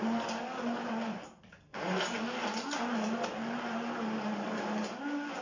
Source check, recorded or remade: recorded